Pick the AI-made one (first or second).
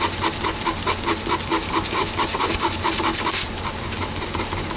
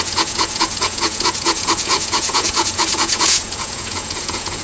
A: second